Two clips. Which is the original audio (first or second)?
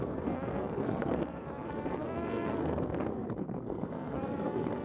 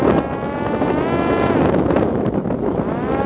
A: second